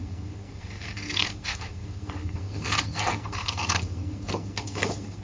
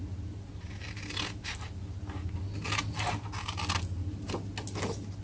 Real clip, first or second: second